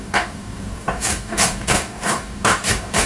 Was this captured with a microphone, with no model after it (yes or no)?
no